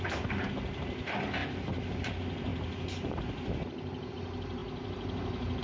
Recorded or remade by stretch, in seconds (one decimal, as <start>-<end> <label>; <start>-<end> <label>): 0.0-5.6 recorded